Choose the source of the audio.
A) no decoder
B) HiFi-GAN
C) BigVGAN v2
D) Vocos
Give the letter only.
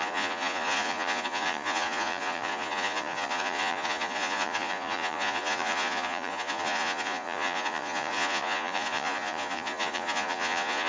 D